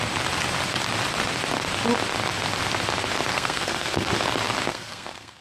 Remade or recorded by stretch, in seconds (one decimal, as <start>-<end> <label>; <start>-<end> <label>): 0.0-3.3 recorded; 3.3-4.1 remade; 4.1-4.7 recorded; 4.7-5.4 remade